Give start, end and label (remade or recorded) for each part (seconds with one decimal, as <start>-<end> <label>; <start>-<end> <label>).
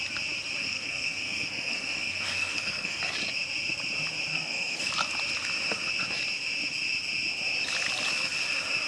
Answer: 0.0-0.6 recorded; 0.6-3.0 remade; 3.0-4.3 recorded; 4.3-4.9 remade; 4.9-8.9 recorded